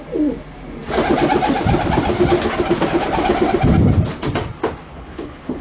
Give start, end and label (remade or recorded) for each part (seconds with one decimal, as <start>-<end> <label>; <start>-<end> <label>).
0.0-4.9 recorded; 4.9-5.6 remade

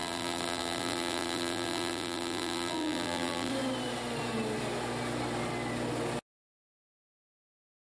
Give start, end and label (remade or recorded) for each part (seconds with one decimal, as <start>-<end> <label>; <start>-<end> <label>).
0.0-3.5 remade; 3.5-6.5 recorded; 6.5-7.9 remade

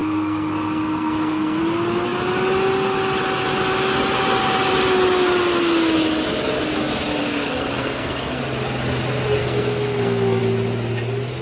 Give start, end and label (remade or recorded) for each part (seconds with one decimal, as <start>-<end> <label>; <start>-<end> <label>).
0.0-1.6 remade; 1.6-7.2 recorded; 7.2-8.4 remade; 8.4-9.4 recorded; 9.4-10.4 remade; 10.4-11.4 recorded

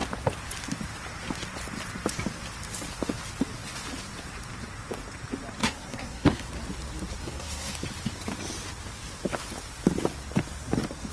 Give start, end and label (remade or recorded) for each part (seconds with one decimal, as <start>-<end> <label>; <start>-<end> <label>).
0.0-5.6 recorded; 5.6-6.4 remade; 6.4-7.2 recorded; 7.2-7.7 remade; 7.7-11.1 recorded

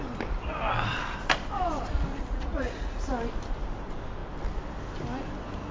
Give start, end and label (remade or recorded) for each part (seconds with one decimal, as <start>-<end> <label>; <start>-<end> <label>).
0.0-2.2 recorded; 2.2-3.1 remade; 3.1-5.7 recorded

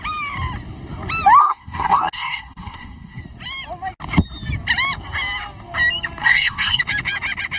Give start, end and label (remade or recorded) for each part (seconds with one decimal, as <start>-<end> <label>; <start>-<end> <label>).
0.0-1.4 recorded; 1.4-3.2 remade; 3.2-6.2 recorded; 6.2-6.8 remade; 6.8-7.6 recorded

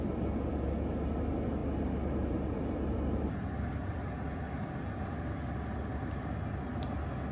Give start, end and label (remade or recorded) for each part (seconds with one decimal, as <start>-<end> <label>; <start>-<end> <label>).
0.0-7.3 recorded